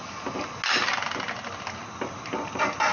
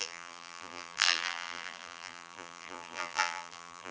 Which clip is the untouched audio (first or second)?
first